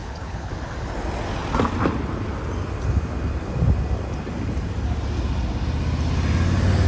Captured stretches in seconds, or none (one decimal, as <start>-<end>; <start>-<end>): 0.5-6.9